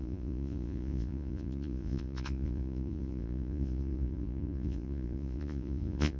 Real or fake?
fake